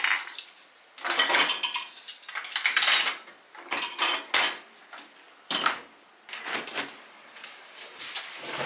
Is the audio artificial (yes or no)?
no